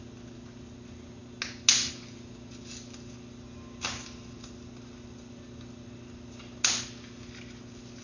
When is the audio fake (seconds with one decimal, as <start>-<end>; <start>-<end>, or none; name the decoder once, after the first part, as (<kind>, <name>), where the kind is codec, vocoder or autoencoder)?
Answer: none